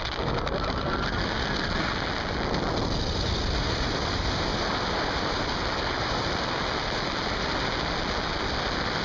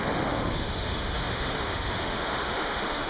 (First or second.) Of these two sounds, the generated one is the second